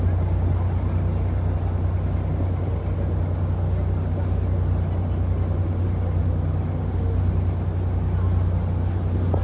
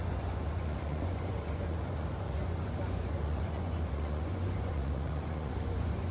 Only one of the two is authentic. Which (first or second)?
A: first